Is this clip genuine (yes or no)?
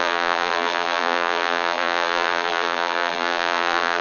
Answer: no